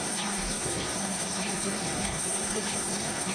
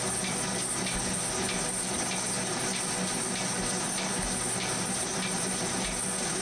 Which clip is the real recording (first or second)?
second